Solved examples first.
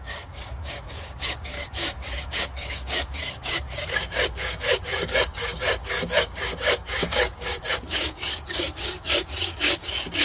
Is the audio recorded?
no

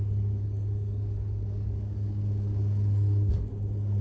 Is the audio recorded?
no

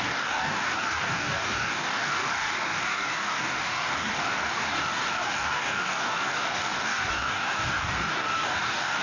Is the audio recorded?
no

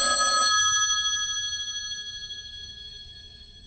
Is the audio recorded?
no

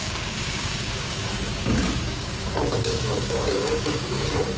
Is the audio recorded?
no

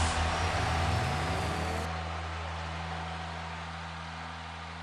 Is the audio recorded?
yes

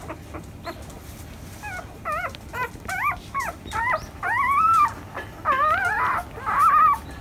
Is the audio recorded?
yes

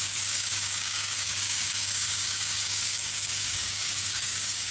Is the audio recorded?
no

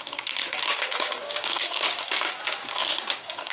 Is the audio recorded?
no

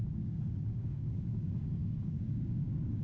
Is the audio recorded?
no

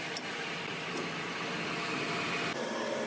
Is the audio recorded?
yes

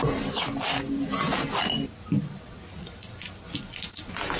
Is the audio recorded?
yes